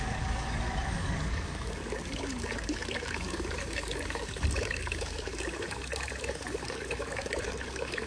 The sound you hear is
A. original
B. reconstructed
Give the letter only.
B